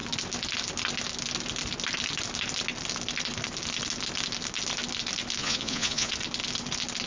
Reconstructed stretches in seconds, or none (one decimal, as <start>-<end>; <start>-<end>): 5.4-6.1